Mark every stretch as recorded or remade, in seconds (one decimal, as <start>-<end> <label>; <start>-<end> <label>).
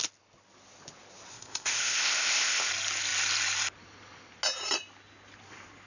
0.0-1.3 recorded; 1.3-2.7 remade; 2.7-5.9 recorded